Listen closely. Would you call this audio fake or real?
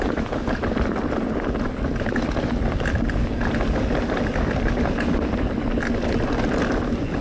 real